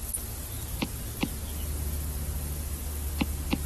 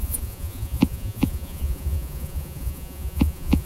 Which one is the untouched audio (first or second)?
first